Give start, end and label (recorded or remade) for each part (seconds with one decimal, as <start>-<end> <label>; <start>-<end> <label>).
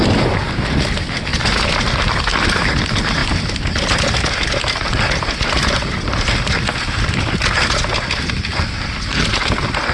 0.0-1.3 recorded; 1.3-2.7 remade; 2.7-9.9 recorded